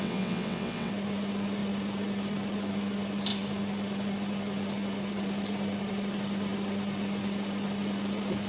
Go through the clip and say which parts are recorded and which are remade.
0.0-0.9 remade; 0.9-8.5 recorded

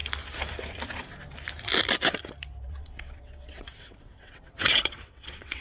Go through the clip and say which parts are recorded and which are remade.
0.0-2.7 recorded; 2.7-5.6 remade

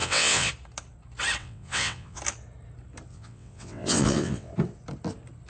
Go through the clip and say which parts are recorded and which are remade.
0.0-0.5 remade; 0.5-1.4 recorded; 1.4-2.2 remade; 2.2-3.1 recorded; 3.1-4.5 remade; 4.5-5.5 recorded